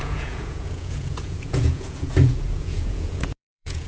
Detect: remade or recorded remade